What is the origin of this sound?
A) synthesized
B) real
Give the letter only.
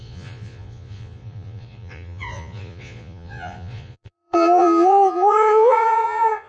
A